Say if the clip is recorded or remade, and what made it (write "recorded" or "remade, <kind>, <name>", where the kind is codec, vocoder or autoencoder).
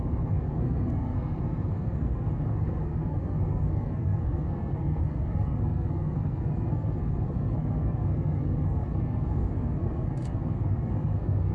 remade, codec, SNAC